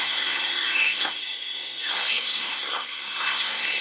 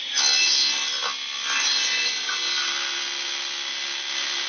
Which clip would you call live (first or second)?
second